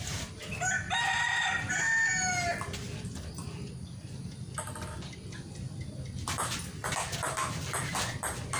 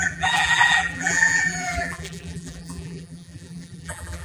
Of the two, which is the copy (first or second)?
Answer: second